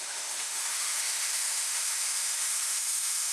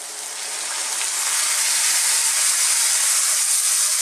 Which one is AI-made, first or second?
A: first